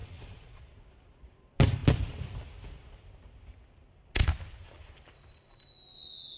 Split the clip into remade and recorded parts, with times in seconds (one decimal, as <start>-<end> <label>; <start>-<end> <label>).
0.0-0.6 remade; 0.6-6.4 recorded